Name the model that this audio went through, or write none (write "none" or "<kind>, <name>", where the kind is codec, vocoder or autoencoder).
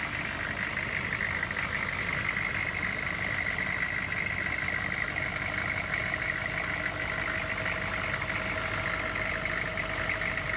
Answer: none